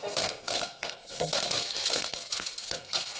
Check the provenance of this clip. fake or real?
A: fake